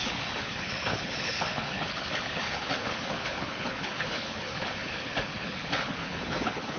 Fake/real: fake